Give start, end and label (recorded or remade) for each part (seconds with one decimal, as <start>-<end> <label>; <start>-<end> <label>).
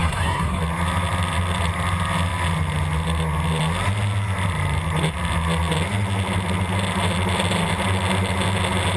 0.0-0.6 remade; 0.6-9.0 recorded